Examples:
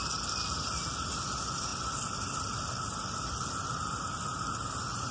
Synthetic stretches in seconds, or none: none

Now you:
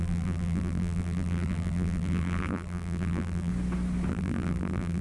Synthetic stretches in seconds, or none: 0.0-3.5; 4.1-5.0

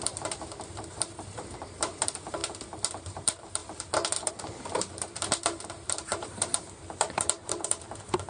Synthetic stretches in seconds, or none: 0.0-2.4; 2.9-3.6; 4.3-8.3

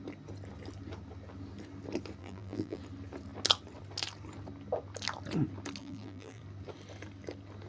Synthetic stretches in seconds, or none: 2.2-2.8; 5.8-6.4